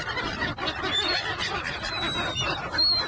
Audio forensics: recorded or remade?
recorded